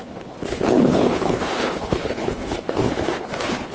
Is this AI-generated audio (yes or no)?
yes